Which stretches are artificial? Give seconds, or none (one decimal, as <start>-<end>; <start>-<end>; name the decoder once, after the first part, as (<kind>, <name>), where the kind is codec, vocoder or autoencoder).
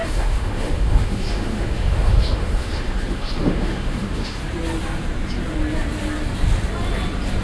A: 0.0-4.4 (autoencoder, DAC-VAE)